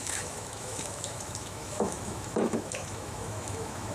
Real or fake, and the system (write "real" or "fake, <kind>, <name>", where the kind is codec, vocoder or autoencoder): fake, autoencoder, DAC-VAE